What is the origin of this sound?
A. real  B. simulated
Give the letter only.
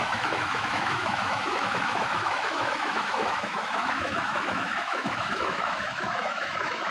B